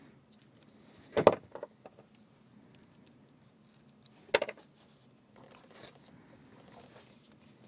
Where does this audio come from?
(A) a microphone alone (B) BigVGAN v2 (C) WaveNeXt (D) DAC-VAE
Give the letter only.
A